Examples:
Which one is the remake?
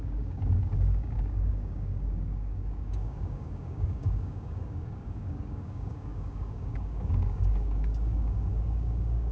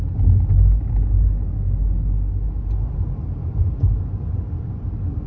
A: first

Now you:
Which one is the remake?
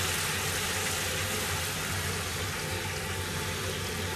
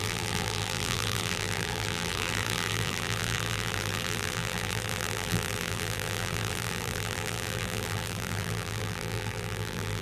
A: second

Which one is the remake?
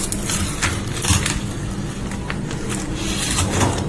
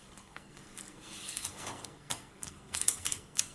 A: second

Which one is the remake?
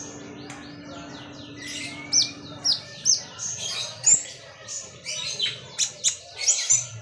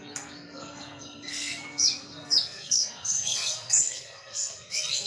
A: second